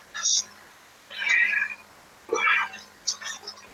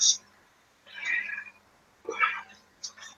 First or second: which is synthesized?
second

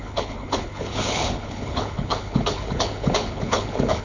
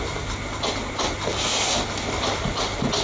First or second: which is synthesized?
first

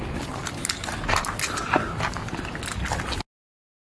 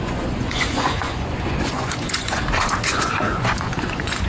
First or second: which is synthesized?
second